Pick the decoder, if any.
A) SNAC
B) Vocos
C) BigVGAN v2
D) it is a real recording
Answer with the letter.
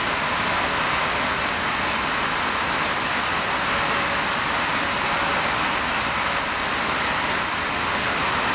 D